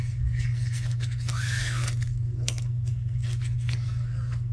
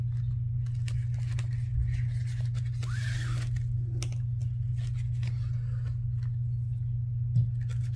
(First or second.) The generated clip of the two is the first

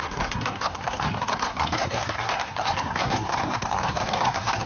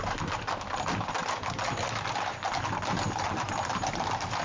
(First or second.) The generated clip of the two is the first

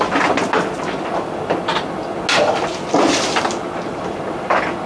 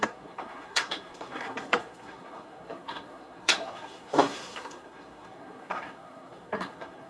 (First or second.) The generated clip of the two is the second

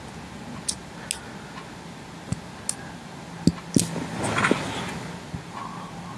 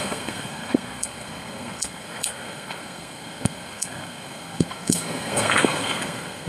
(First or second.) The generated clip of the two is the second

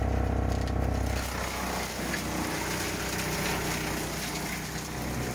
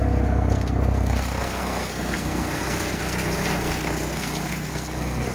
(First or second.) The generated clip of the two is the second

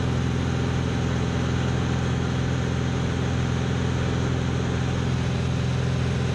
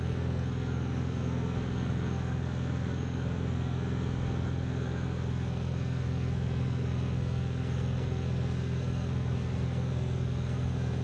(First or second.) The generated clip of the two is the second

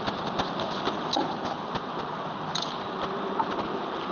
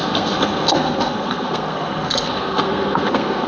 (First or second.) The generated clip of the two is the second